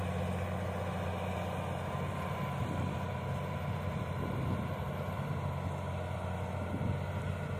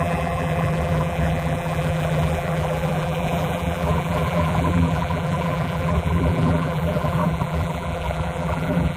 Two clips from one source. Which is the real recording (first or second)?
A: first